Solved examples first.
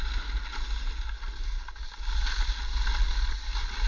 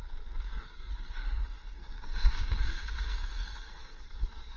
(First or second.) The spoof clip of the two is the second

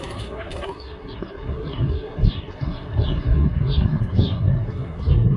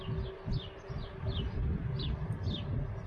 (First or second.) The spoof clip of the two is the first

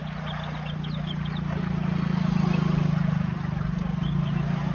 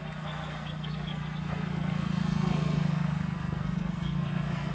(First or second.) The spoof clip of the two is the second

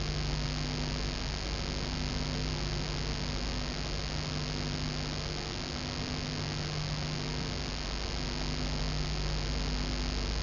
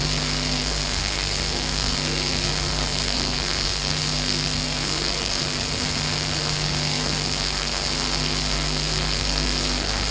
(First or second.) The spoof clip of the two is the second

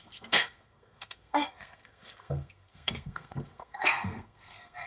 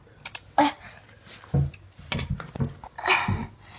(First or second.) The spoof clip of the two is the first